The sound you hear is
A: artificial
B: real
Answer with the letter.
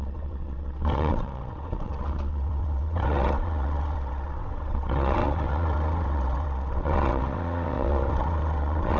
A